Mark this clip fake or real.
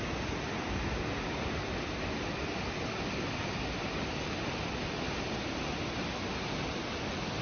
real